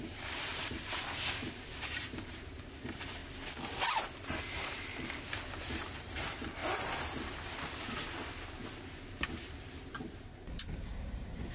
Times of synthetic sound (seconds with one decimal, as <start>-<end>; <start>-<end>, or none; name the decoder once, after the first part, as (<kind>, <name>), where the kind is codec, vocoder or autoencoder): 0.0-0.5 (vocoder, BigVGAN v2); 1.7-3.2; 4.4-6.6; 9.3-11.5